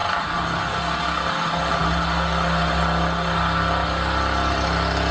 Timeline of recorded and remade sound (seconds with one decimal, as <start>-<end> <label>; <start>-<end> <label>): 0.0-5.1 recorded